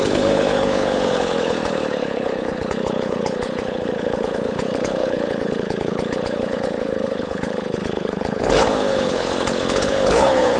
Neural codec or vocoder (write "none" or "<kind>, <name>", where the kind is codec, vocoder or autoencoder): codec, HILCodec